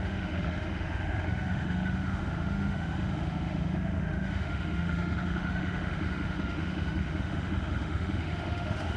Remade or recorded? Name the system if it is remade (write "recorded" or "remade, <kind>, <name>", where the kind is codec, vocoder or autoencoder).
remade, autoencoder, DAC-VAE